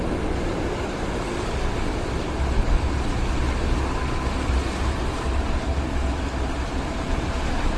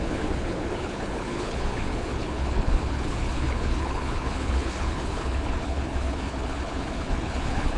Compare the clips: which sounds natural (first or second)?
first